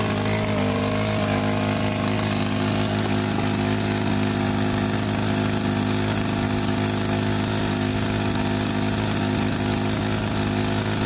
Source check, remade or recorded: recorded